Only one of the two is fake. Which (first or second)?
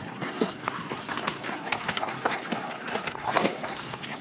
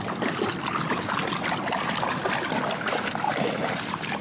first